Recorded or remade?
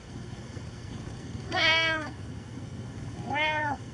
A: remade